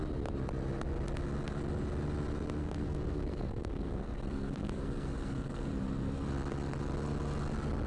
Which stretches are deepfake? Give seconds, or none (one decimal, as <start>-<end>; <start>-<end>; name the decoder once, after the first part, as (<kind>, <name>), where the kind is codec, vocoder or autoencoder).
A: 2.6-5.7 (codec, SNAC)